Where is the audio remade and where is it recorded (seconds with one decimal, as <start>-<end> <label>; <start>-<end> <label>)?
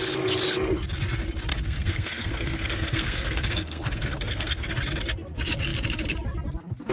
0.0-1.5 recorded; 1.5-4.7 remade; 4.7-6.9 recorded